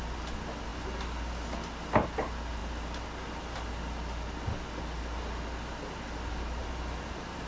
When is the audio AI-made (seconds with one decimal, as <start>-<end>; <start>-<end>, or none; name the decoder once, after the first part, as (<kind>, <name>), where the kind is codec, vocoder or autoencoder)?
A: 6.6-7.5 (vocoder, BigVGAN v2)